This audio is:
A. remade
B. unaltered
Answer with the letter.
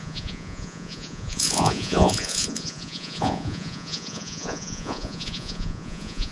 A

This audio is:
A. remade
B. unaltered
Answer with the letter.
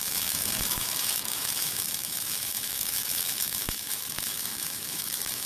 A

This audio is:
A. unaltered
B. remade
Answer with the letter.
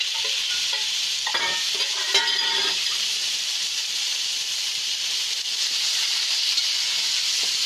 B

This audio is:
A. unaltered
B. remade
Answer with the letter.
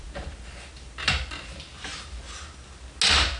A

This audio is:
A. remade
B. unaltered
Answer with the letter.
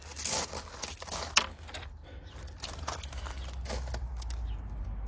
B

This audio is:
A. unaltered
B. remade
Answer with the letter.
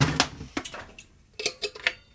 A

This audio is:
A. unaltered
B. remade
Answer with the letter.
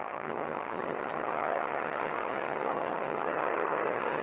B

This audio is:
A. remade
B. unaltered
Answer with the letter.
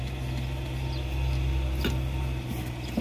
B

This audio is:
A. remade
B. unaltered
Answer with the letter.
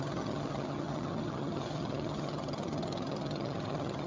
A